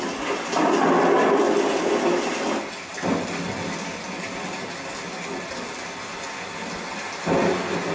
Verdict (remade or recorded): recorded